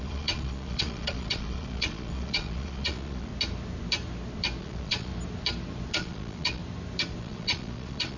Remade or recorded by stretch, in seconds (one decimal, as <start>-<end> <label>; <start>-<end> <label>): 0.0-3.3 remade; 3.3-4.6 recorded; 4.6-5.1 remade; 5.1-5.9 recorded; 5.9-6.6 remade; 6.6-7.2 recorded; 7.2-8.2 remade